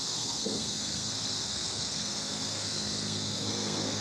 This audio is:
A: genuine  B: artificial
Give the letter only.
B